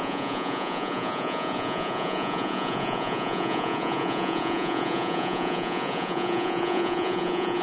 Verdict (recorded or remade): remade